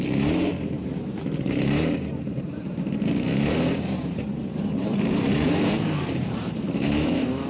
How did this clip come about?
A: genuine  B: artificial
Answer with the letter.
B